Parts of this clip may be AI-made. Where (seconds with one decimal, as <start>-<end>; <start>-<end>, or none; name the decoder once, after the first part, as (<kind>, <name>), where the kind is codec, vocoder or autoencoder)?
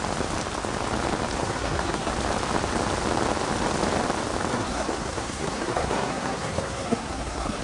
1.4-2.1 (codec, SNAC); 4.5-7.6